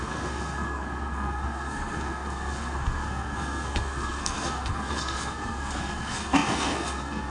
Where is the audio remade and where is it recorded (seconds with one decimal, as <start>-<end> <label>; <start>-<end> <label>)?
0.0-7.3 remade